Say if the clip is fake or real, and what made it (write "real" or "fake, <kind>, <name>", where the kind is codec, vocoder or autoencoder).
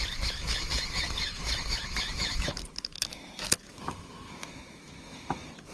fake, autoencoder, DAC-VAE